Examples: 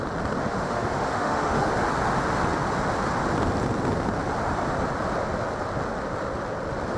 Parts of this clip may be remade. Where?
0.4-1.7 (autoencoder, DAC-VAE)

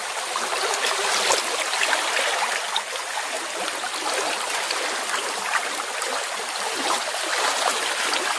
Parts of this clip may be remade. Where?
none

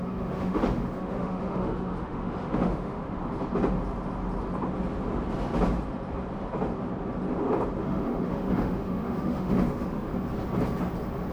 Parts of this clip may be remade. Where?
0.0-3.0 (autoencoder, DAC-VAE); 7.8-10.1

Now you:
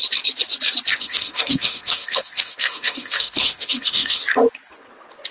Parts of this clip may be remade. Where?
1.0-4.2 (autoencoder, DAC-VAE)